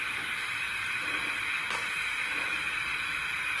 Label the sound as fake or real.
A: fake